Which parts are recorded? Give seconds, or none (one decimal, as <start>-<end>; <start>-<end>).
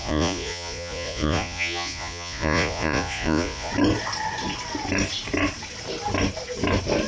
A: 3.7-7.1